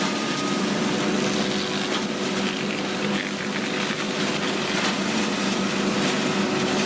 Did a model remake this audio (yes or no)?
no